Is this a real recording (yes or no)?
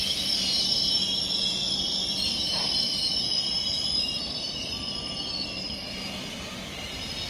yes